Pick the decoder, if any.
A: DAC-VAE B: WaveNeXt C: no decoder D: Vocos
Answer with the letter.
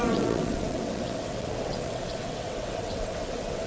B